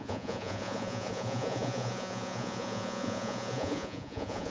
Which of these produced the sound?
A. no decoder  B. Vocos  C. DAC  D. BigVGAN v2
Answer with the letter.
B